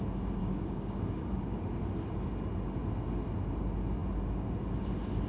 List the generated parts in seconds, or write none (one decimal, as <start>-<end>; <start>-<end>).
0.4-1.8